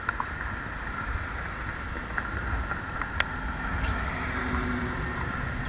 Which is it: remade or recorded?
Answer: recorded